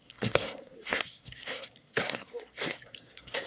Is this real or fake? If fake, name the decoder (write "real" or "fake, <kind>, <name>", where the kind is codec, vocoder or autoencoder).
fake, codec, SNAC